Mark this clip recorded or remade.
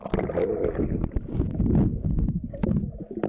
recorded